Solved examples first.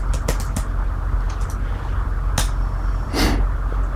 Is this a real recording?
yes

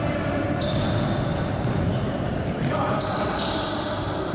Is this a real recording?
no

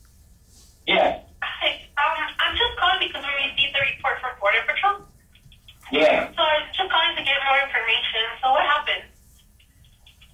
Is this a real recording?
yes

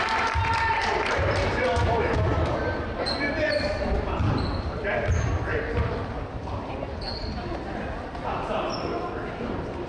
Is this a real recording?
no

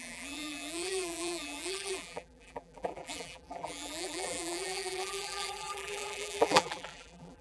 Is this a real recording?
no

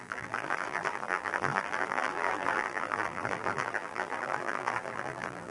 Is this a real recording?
no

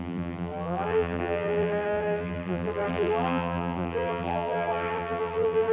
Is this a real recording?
no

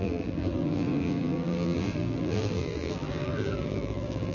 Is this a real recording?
no